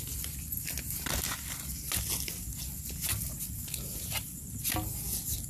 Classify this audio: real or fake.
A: real